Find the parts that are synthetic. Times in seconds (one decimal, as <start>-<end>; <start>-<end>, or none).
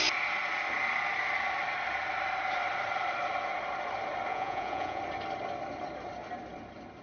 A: 4.3-5.0